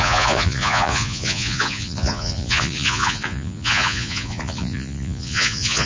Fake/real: fake